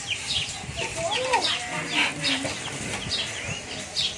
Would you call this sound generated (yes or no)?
no